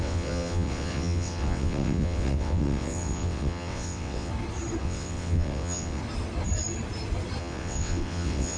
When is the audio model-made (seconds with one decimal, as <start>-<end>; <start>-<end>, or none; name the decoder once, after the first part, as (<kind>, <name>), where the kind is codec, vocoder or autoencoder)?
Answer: 0.0-4.3 (vocoder, WaveNeXt); 4.8-6.0; 7.4-8.6